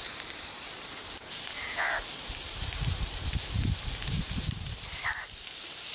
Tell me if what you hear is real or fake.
fake